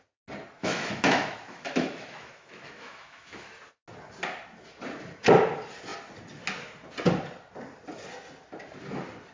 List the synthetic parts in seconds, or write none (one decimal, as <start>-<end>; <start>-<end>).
0.6-3.5

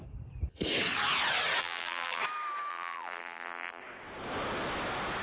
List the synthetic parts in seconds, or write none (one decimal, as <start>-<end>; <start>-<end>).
1.6-2.2; 2.7-3.8

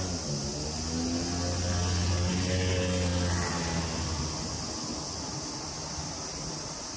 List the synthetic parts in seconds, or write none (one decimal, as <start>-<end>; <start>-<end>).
none

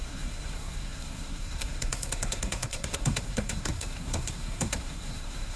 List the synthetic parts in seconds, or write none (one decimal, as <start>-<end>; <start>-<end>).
0.0-5.6